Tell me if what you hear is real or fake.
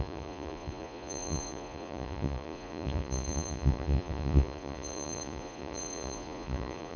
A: fake